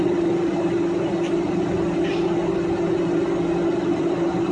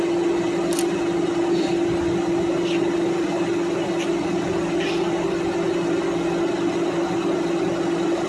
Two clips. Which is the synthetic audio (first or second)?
first